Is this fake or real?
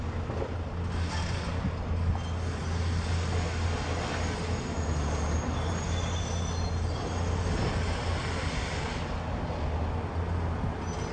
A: real